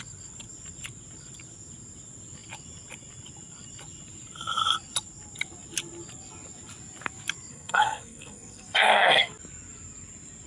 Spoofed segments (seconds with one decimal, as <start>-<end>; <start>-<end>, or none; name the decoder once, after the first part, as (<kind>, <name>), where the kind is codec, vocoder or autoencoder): 7.5-9.3 (codec, SNAC)